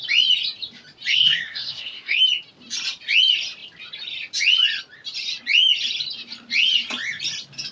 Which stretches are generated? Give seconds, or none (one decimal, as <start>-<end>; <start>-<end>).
1.1-2.2